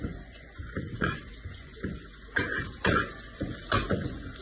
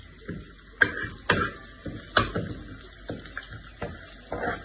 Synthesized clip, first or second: first